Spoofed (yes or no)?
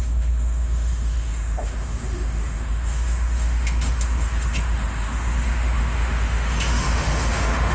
yes